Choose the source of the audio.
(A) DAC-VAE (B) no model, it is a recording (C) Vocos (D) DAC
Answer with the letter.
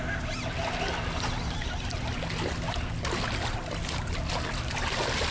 B